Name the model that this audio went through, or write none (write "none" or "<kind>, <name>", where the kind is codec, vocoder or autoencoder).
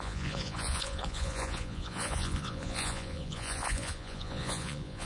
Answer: vocoder, Vocos